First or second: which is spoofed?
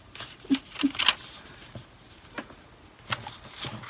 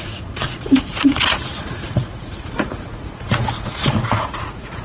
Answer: second